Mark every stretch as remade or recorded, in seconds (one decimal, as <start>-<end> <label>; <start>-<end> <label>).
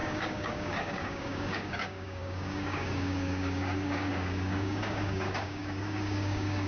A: 0.0-6.7 remade